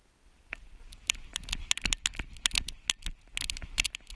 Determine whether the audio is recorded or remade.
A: recorded